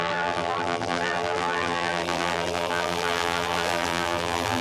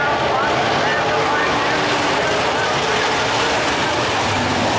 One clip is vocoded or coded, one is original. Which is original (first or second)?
second